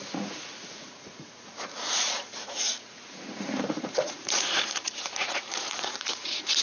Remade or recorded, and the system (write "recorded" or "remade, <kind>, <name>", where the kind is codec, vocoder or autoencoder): remade, vocoder, Vocos